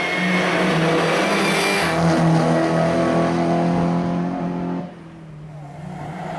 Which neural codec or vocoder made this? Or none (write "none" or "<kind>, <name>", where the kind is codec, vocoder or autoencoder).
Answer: none